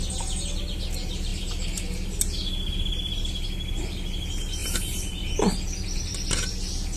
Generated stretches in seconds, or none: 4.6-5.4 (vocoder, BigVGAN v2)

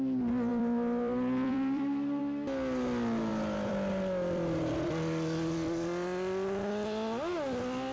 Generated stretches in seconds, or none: 0.5-2.2 (vocoder, BigVGAN v2); 3.3-6.7

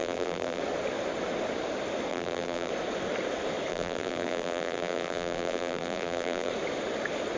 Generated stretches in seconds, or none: 0.0-0.6 (vocoder, BigVGAN v2); 2.1-2.7; 3.7-6.5

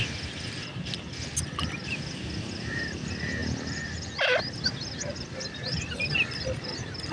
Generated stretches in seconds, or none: none

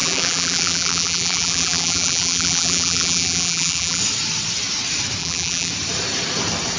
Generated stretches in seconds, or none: 0.0-4.0 (vocoder, BigVGAN v2); 5.2-5.7

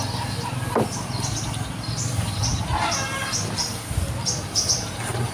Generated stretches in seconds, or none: none